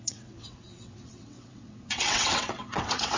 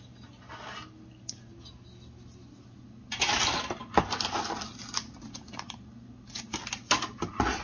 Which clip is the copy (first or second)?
first